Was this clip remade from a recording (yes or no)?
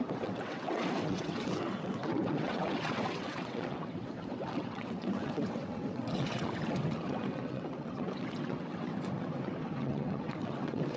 yes